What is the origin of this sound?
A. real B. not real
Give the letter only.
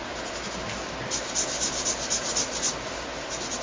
A